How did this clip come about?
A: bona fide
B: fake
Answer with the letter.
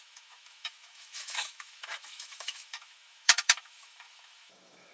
B